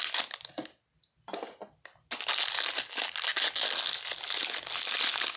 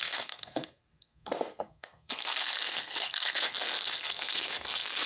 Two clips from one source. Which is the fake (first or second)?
second